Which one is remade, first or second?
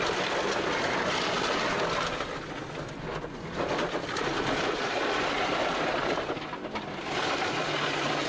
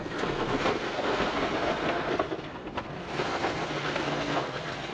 second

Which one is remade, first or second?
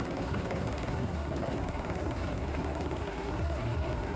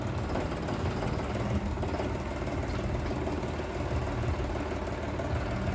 first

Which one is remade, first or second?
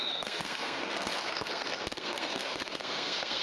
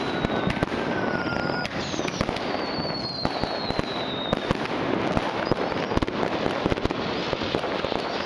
first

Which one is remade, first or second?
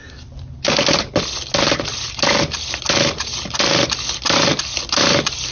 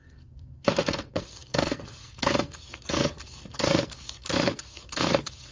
second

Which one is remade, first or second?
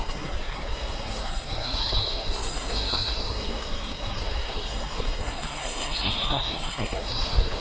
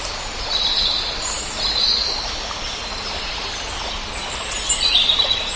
first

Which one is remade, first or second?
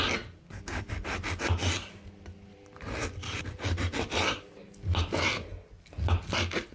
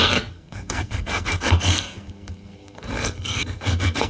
second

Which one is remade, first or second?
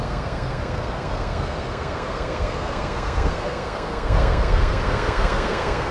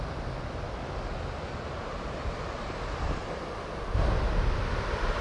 first